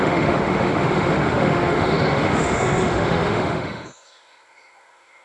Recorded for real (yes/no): no